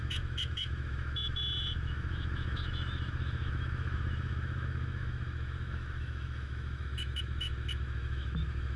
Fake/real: fake